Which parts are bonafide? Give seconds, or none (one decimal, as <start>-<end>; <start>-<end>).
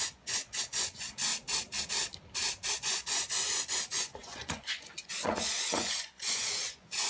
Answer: 1.3-2.7